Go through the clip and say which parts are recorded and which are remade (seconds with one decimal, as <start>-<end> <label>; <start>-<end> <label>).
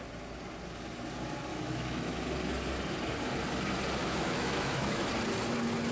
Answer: 0.0-1.5 recorded; 1.5-2.2 remade; 2.2-4.0 recorded; 4.0-5.1 remade; 5.1-5.9 recorded